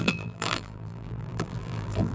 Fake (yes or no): yes